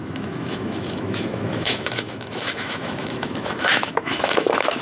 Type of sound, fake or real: fake